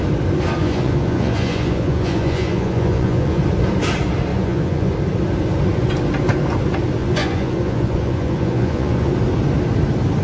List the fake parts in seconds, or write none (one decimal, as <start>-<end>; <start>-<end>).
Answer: 0.6-3.4; 4.3-4.9; 7.0-9.1